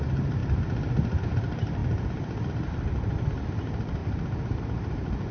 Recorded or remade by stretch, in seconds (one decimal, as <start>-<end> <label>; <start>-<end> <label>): 0.0-0.4 remade; 0.4-1.2 recorded; 1.2-1.8 remade; 1.8-2.7 recorded; 2.7-5.3 remade